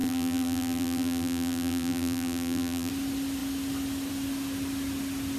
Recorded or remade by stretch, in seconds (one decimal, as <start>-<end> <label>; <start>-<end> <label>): 0.0-2.9 remade; 2.9-5.4 recorded